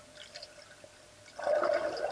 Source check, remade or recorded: recorded